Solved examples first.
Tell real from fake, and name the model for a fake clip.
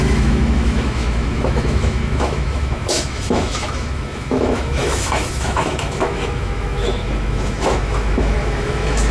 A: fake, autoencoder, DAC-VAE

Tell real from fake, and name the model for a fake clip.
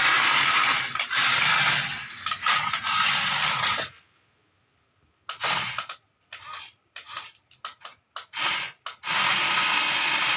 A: real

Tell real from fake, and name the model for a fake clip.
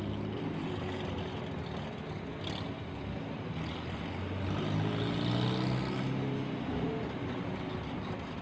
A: real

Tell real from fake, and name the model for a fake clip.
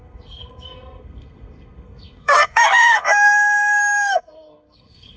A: fake, codec, SNAC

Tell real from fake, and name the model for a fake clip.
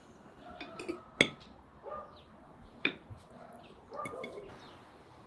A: real